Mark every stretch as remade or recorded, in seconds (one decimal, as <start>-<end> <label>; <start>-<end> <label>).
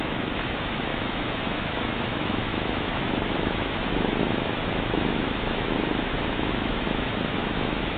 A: 0.0-8.0 remade